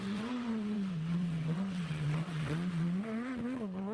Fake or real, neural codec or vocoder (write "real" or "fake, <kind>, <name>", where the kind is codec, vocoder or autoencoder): fake, vocoder, WaveNeXt